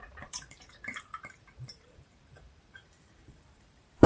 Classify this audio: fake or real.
fake